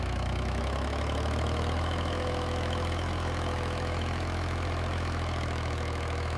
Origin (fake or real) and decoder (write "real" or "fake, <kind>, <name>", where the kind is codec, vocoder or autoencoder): fake, autoencoder, DAC-VAE